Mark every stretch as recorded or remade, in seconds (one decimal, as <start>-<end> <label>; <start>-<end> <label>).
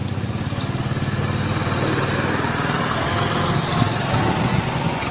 0.0-4.5 recorded; 4.5-5.1 remade